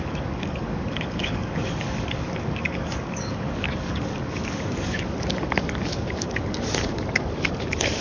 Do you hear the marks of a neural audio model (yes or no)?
yes